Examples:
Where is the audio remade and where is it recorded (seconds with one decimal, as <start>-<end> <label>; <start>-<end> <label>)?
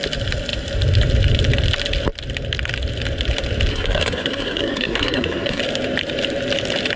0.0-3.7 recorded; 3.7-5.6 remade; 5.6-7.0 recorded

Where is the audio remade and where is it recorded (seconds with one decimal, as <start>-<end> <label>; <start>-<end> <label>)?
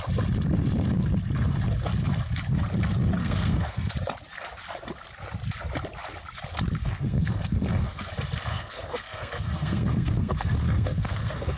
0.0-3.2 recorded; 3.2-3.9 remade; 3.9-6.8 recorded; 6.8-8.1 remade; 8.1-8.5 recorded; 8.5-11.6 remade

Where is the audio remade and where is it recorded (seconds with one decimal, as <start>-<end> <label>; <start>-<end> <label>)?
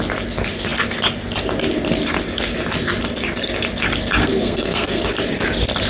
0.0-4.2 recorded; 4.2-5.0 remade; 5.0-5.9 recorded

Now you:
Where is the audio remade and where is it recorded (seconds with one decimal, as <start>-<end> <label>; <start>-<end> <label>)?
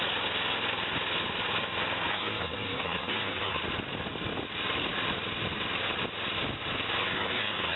0.0-2.1 recorded; 2.1-3.6 remade; 3.6-7.0 recorded; 7.0-7.8 remade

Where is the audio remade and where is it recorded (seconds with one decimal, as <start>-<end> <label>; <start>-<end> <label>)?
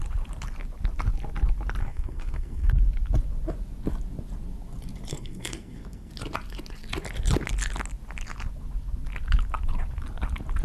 0.0-1.8 recorded; 1.8-2.7 remade; 2.7-5.1 recorded; 5.1-6.1 remade; 6.1-10.6 recorded